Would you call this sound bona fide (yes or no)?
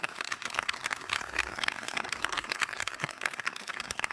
no